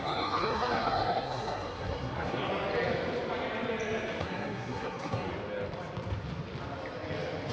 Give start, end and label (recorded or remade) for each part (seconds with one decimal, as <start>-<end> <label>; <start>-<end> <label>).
0.0-2.5 remade; 2.5-4.2 recorded; 4.2-5.3 remade; 5.3-7.5 recorded